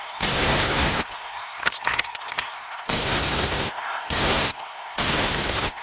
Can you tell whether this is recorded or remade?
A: remade